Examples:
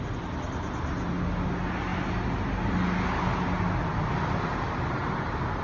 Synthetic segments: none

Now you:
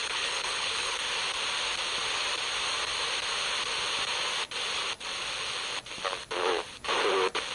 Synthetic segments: 0.0-1.0

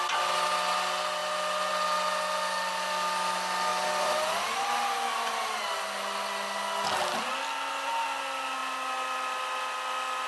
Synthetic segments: 3.7-5.6

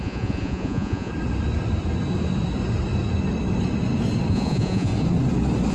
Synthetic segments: 0.0-1.1; 4.3-4.9

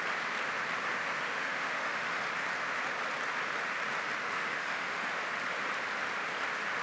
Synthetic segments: 1.0-2.2; 4.2-5.1

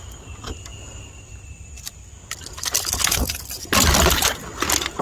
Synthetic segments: none

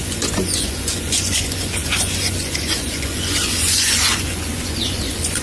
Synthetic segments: 0.0-5.4

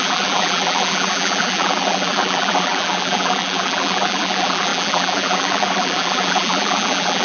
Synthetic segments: 0.0-7.2